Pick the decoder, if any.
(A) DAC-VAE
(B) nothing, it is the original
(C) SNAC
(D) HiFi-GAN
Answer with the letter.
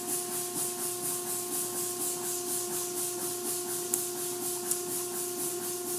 B